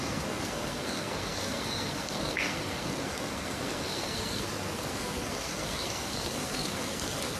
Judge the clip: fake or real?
fake